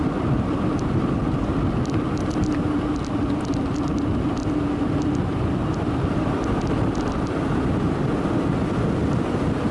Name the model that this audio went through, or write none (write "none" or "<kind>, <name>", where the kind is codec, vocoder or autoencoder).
none